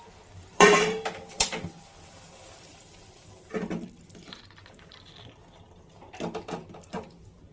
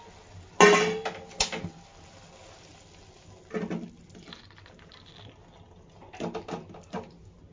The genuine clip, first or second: second